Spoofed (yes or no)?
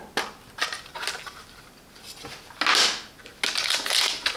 no